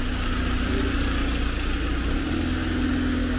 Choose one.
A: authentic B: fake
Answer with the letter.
A